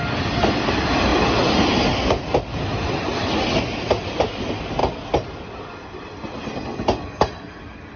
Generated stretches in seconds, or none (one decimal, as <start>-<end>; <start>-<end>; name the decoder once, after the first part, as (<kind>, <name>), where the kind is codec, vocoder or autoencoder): 1.1-2.3 (vocoder, BigVGAN v2)